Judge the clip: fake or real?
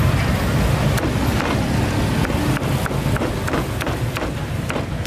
real